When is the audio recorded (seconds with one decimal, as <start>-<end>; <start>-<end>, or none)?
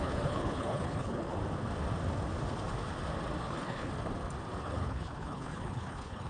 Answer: 1.4-3.4; 3.9-4.6